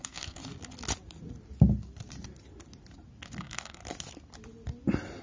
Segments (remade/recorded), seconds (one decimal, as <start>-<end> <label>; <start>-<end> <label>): 0.0-0.4 remade; 0.4-3.4 recorded; 3.4-3.8 remade; 3.8-5.2 recorded